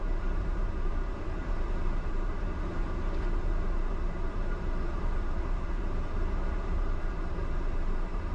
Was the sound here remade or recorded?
remade